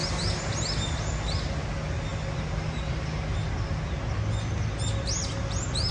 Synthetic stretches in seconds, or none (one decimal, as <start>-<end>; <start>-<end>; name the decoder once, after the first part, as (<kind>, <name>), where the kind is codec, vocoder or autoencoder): none